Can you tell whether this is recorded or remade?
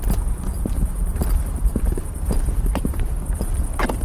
remade